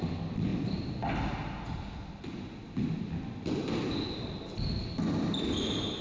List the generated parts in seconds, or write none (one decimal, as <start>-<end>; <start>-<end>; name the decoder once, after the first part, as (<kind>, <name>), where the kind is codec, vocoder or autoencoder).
none

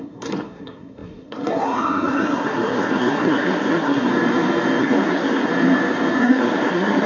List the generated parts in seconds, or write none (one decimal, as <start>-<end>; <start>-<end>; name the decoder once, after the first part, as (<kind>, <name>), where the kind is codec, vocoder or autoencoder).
0.0-4.1 (codec, SNAC); 4.8-5.5; 6.2-7.1